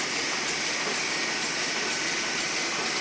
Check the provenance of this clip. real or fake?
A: real